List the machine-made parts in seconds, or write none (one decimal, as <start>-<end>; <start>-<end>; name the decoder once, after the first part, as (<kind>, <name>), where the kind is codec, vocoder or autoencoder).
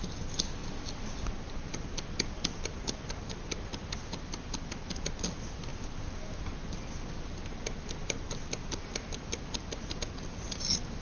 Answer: none